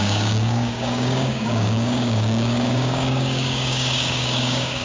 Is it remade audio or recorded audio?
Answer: remade